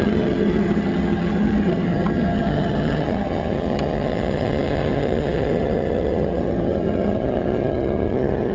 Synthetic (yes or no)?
yes